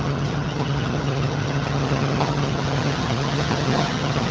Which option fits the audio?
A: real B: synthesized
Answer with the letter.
B